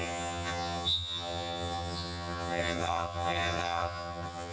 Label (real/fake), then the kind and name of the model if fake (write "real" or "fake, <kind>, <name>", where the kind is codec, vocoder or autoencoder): fake, vocoder, HiFi-GAN